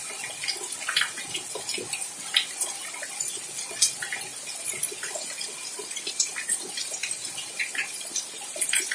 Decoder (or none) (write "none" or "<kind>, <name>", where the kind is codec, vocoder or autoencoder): none